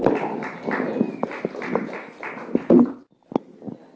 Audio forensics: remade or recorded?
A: recorded